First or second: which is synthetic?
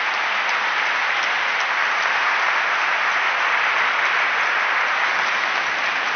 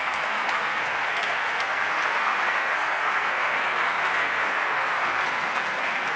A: second